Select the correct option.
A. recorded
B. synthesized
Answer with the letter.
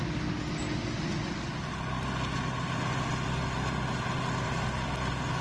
A